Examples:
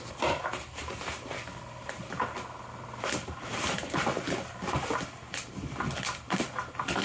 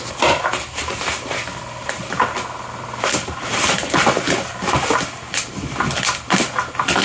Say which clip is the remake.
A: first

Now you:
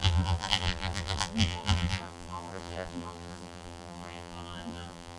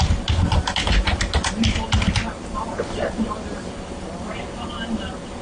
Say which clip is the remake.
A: first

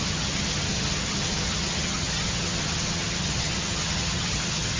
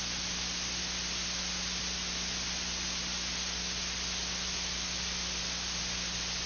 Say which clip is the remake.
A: first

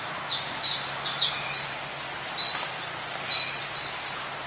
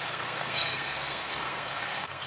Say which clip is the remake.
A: second